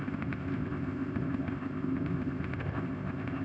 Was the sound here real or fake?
fake